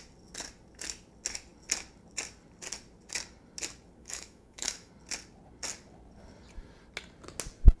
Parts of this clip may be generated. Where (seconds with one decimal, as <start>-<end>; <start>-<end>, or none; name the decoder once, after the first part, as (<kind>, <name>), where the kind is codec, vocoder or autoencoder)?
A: 4.0-4.9 (autoencoder, DAC-VAE)